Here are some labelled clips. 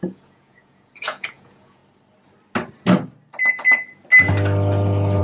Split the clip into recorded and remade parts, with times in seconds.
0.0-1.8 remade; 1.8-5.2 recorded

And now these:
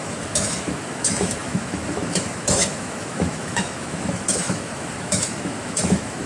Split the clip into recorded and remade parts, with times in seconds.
0.0-6.3 remade

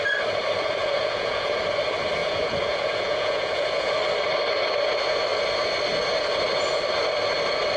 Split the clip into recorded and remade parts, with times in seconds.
0.0-0.8 recorded; 0.8-1.6 remade; 1.6-2.2 recorded; 2.2-3.9 remade; 3.9-7.8 recorded

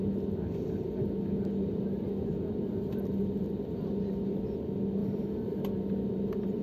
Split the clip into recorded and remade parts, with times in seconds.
0.0-5.0 recorded; 5.0-5.6 remade; 5.6-6.6 recorded